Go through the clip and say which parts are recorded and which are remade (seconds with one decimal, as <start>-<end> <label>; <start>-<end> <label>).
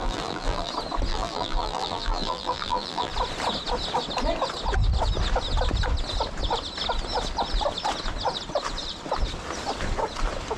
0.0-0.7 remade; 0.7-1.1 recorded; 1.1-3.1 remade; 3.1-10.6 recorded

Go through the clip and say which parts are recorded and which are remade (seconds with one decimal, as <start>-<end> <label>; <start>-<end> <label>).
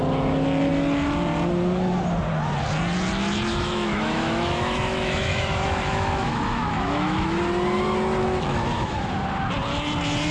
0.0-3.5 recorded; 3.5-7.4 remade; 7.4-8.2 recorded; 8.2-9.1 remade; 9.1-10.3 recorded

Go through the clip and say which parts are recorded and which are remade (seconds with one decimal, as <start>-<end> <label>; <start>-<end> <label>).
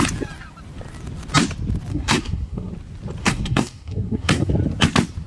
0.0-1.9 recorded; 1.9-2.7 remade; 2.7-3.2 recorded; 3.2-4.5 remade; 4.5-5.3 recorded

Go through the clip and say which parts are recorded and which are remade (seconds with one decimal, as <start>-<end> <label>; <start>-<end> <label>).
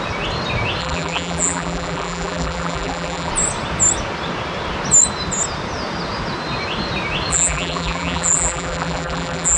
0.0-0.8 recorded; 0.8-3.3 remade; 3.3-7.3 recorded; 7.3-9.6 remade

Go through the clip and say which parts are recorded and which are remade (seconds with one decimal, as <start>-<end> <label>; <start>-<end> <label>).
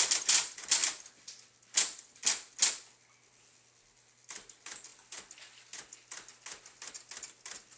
0.0-7.8 recorded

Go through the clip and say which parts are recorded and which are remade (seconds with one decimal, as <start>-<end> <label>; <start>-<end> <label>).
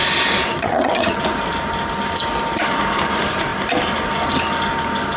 0.0-0.5 recorded; 0.5-1.2 remade; 1.2-5.2 recorded